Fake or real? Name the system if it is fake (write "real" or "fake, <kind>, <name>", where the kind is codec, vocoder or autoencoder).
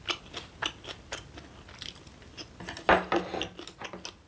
real